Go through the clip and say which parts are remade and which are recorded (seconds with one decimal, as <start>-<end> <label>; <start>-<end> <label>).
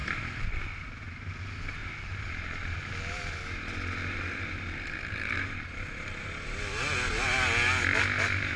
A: 0.0-0.6 remade; 0.6-1.8 recorded; 1.8-2.3 remade; 2.3-4.0 recorded; 4.0-6.2 remade; 6.2-8.6 recorded